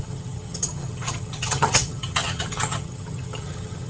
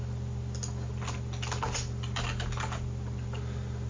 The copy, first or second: first